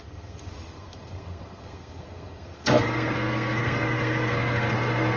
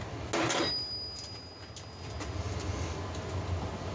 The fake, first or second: first